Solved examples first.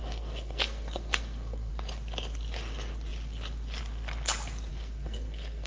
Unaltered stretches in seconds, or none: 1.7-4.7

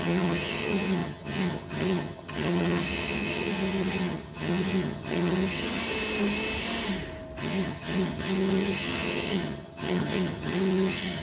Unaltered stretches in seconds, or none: 5.8-7.4

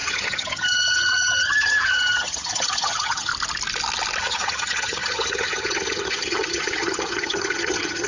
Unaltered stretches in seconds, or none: 3.3-4.2

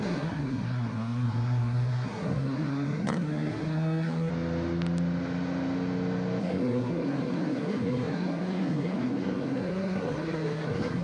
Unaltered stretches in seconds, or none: 4.3-6.4

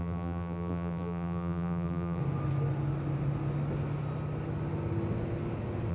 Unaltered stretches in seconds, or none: 2.2-5.9

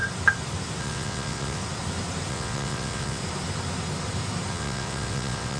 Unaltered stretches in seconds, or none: 0.0-0.8; 1.6-2.3; 3.2-4.5

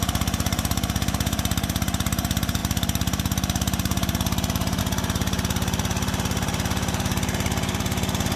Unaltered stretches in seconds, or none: none